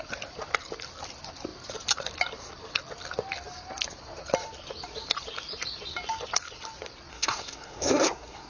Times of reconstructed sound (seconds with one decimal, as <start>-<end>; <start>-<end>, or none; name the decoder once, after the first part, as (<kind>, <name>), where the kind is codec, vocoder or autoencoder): 7.1-8.5 (codec, SNAC)

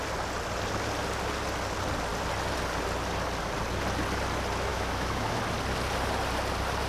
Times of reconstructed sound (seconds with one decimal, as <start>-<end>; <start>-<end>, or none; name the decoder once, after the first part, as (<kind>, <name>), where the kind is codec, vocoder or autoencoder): 4.7-5.4 (autoencoder, DAC-VAE)

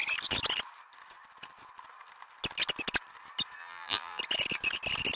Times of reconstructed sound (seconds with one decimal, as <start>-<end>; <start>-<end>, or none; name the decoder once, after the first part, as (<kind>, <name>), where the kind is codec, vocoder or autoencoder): 3.6-4.2 (vocoder, BigVGAN v2)

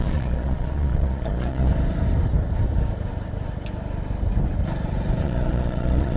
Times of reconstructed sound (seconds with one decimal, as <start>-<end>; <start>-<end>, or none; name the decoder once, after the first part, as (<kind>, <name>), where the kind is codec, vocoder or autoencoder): 0.0-1.7 (vocoder, Vocos); 5.2-6.2

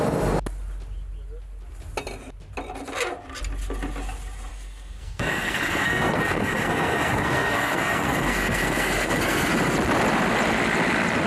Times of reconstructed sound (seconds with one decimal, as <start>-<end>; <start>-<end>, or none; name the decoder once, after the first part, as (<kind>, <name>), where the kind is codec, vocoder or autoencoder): 4.5-9.5 (codec, SNAC)